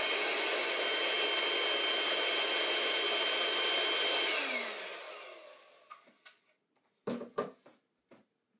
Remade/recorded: recorded